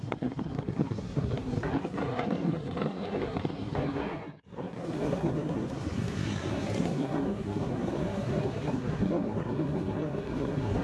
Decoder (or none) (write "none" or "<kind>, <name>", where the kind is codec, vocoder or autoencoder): codec, SNAC